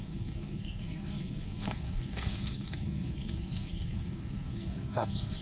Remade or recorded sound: remade